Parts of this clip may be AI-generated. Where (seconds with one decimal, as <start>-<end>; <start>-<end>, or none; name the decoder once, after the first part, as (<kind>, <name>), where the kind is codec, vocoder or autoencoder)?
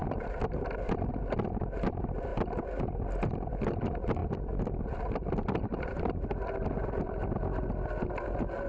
0.0-0.9 (vocoder, BigVGAN v2); 4.2-6.0